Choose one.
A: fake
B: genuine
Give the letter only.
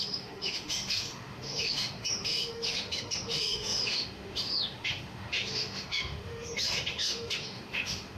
A